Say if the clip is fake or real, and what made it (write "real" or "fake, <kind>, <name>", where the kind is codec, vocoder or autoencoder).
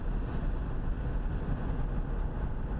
real